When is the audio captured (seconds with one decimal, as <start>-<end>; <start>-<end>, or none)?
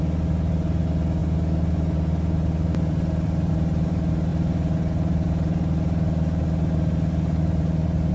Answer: 0.0-8.1